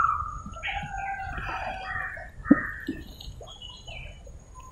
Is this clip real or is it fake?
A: real